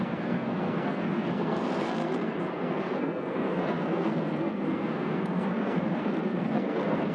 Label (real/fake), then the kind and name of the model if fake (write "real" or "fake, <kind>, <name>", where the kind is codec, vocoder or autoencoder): fake, codec, SNAC